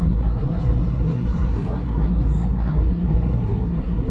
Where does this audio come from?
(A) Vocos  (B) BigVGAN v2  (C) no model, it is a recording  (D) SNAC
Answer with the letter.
D